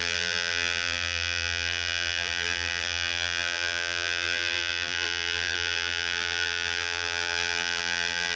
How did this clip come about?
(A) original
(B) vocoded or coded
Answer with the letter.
B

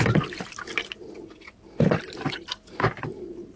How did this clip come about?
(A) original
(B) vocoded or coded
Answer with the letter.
A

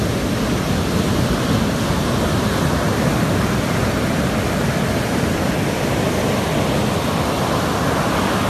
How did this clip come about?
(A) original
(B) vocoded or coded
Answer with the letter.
A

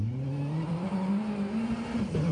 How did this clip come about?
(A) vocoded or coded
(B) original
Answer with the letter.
B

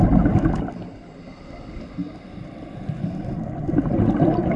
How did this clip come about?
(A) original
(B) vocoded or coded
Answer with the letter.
A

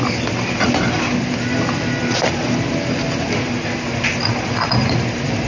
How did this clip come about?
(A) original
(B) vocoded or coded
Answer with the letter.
B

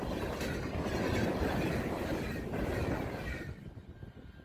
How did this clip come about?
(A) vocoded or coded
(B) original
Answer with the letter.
B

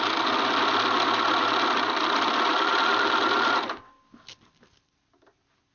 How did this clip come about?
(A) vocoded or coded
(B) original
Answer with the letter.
B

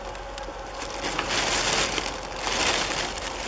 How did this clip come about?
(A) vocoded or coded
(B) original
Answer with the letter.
B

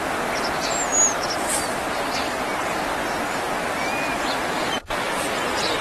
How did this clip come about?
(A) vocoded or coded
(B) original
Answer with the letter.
B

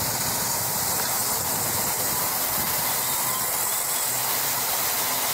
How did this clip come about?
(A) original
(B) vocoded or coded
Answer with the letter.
B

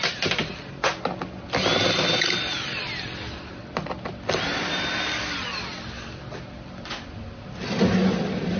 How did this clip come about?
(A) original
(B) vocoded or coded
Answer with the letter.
A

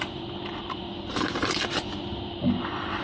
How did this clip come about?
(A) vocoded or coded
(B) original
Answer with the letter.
A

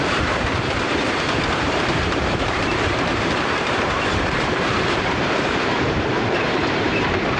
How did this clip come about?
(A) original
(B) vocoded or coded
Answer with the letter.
B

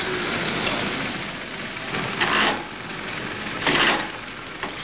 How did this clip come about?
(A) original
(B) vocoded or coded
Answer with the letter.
A